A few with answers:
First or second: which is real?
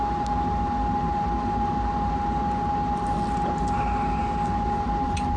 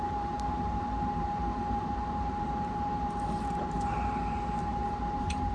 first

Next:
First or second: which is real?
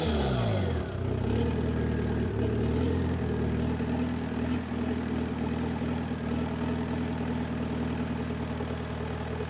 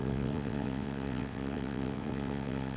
first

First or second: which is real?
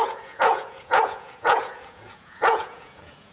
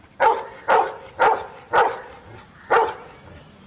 second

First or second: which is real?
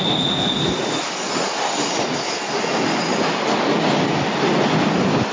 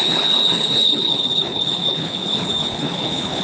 first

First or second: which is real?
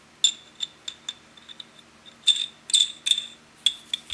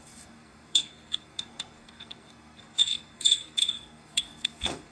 first